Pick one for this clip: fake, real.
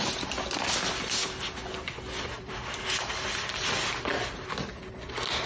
real